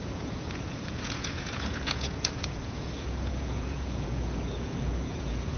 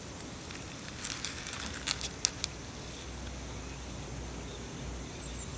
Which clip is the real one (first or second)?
second